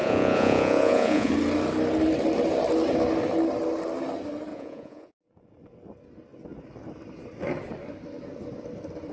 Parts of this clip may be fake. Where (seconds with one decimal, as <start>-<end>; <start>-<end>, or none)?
0.0-1.3; 4.5-5.1